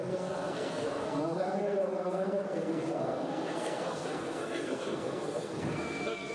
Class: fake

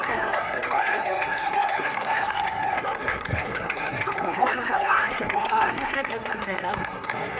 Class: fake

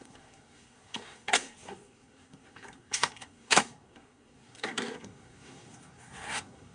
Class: fake